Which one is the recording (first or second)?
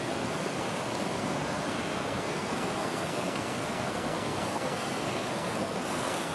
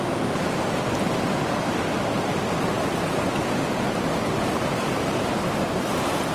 second